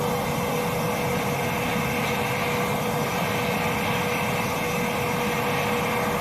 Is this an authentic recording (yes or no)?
yes